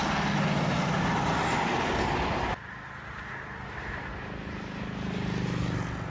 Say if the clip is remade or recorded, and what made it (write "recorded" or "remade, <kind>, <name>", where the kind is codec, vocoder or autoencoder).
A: recorded